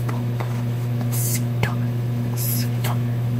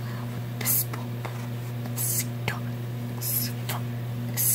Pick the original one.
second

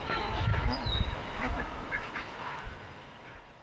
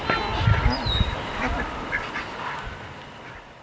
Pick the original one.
second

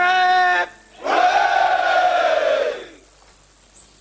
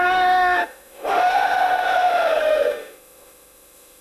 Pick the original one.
first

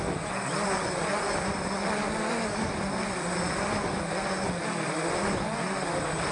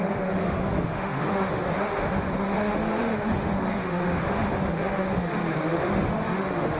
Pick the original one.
first